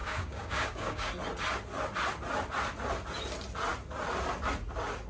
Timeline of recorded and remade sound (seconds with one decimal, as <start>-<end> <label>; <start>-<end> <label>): 0.0-1.1 remade; 1.1-5.1 recorded